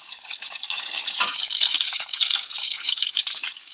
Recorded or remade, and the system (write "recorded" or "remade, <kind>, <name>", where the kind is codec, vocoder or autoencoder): remade, codec, DAC